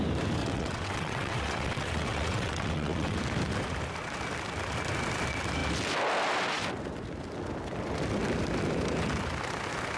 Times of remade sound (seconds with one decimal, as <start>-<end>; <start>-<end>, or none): 0.4-3.2